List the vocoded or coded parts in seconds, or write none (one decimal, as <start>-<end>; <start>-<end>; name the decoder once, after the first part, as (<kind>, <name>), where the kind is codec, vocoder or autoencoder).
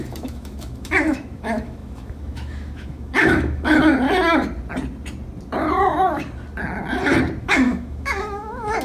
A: 0.0-3.9 (autoencoder, DAC-VAE); 7.4-8.8